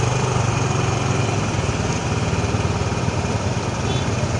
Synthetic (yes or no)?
no